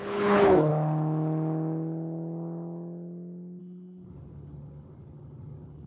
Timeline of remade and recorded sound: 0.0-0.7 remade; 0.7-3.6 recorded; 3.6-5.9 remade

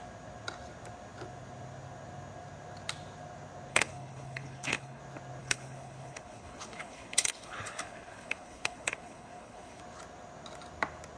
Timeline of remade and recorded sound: 0.0-3.7 recorded; 3.7-5.0 remade; 5.0-5.4 recorded; 5.4-9.8 remade; 9.8-11.2 recorded

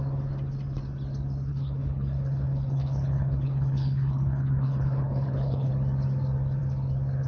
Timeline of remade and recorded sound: 0.0-1.5 recorded; 1.5-5.7 remade; 5.7-7.3 recorded

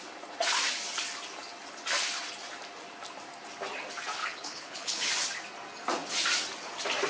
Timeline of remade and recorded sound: 0.0-4.2 recorded; 4.2-5.1 remade; 5.1-7.1 recorded